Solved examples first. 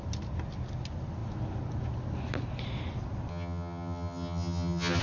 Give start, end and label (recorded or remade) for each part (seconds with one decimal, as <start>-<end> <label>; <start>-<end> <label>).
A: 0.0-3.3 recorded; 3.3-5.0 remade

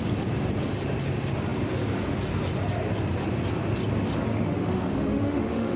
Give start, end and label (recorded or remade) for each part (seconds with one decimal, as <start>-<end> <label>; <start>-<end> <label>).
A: 0.0-4.3 recorded; 4.3-5.8 remade

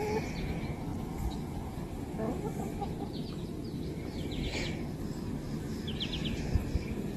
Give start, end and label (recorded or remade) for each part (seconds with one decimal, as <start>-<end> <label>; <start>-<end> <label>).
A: 0.0-7.2 recorded

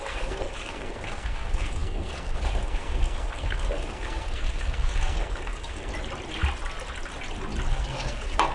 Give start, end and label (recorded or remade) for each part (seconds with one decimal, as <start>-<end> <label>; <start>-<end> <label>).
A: 0.0-5.9 remade; 5.9-7.7 recorded; 7.7-8.5 remade

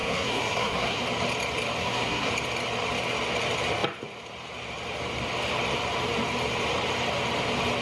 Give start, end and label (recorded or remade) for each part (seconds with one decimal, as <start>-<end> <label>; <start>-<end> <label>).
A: 0.0-1.0 remade; 1.0-1.8 recorded; 1.8-2.3 remade; 2.3-7.8 recorded

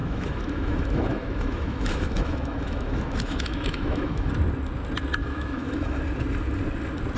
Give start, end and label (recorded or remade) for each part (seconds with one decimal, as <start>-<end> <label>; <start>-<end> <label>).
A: 0.0-4.3 remade; 4.3-5.2 recorded; 5.2-6.0 remade; 6.0-7.2 recorded

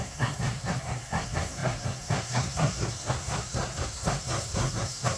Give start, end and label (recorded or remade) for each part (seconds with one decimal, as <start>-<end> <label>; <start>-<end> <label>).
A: 0.0-5.2 remade